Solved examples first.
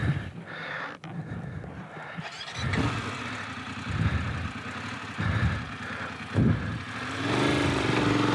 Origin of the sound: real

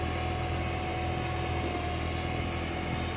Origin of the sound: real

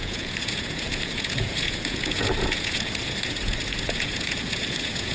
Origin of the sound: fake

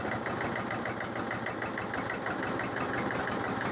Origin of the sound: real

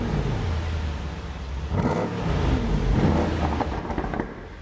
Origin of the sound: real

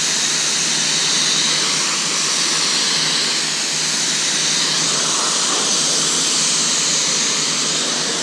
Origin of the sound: real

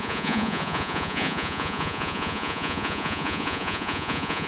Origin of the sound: fake